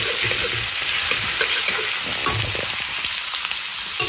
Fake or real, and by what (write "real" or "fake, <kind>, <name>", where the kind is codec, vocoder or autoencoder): real